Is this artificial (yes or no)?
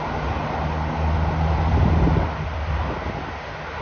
no